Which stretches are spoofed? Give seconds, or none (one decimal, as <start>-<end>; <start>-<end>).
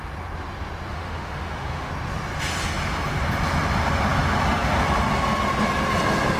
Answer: 0.9-1.9